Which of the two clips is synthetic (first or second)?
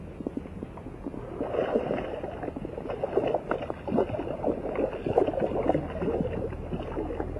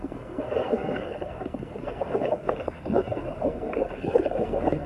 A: second